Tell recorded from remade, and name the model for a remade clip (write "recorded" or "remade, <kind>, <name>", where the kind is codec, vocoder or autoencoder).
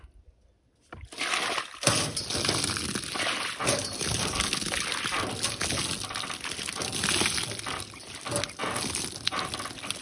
recorded